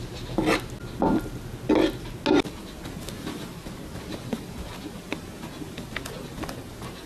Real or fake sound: real